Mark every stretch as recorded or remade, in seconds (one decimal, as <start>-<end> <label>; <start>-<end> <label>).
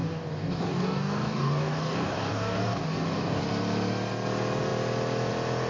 0.0-3.4 remade; 3.4-5.7 recorded